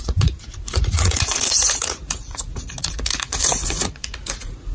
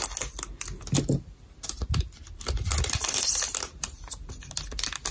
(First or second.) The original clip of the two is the second